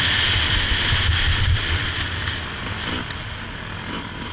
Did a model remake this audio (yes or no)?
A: no